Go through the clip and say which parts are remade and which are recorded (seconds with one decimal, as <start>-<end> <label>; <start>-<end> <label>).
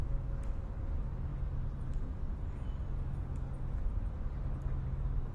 0.0-5.3 recorded